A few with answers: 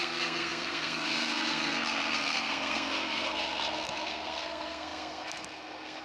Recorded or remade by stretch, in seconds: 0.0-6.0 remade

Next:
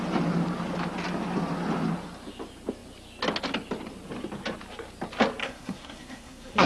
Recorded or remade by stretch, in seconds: 0.0-5.4 recorded; 5.4-6.7 remade

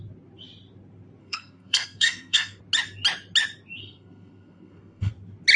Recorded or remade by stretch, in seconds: 0.0-1.2 recorded; 1.2-2.6 remade; 2.6-3.8 recorded; 3.8-5.1 remade; 5.1-5.6 recorded

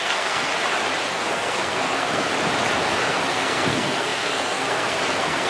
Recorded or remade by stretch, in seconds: 0.0-0.5 remade; 0.5-1.1 recorded; 1.1-2.3 remade; 2.3-3.0 recorded; 3.0-5.5 remade

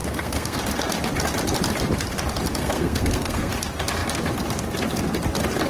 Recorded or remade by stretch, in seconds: 0.0-0.6 remade; 0.6-2.6 recorded; 2.6-3.5 remade; 3.5-5.7 recorded